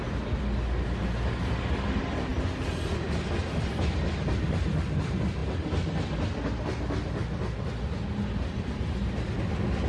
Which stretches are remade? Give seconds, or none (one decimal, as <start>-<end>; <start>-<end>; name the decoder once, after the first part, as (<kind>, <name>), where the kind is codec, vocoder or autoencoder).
none